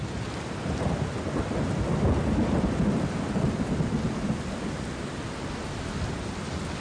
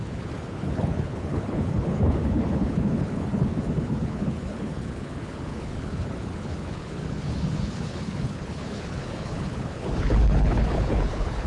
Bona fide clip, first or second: first